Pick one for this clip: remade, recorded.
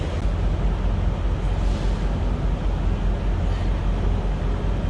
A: recorded